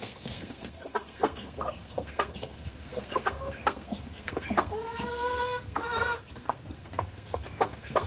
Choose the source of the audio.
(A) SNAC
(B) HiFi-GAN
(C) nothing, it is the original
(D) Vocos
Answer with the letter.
A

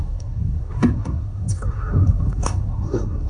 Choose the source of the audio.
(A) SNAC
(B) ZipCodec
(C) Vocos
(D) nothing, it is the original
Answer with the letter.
A